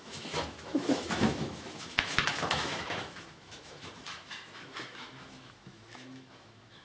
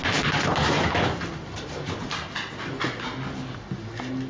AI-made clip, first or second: first